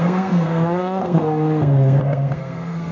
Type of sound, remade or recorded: remade